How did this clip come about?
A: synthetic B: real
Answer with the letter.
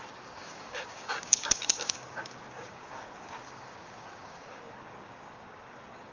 A